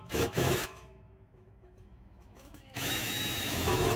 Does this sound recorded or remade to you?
remade